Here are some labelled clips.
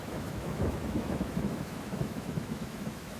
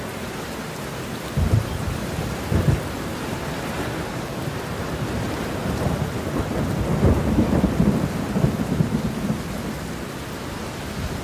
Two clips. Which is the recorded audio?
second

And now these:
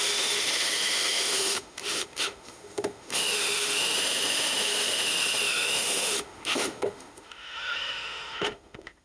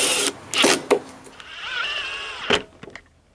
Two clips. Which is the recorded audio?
second